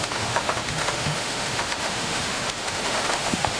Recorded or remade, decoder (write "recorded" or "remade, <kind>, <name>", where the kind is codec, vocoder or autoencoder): remade, autoencoder, DAC-VAE